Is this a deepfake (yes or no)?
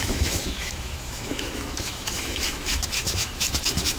yes